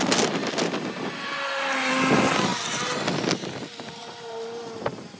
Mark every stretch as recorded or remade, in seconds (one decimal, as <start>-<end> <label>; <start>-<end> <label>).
0.0-5.2 recorded